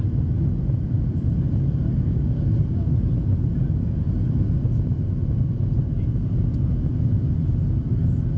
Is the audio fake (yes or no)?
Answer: no